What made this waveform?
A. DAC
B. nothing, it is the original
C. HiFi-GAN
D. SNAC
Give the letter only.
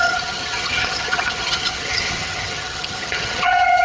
C